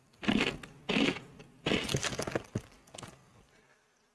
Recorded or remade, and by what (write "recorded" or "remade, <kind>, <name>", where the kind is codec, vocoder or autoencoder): recorded